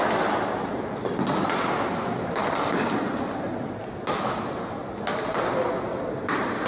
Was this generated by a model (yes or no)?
no